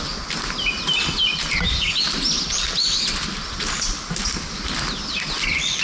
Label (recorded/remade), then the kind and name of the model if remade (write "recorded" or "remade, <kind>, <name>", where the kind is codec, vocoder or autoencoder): remade, vocoder, BigVGAN v2